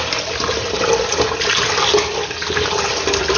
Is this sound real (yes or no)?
yes